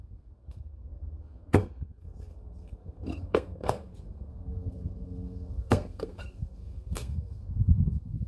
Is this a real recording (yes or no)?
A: no